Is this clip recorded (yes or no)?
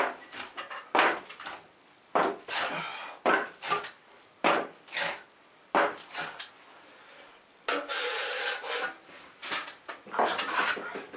yes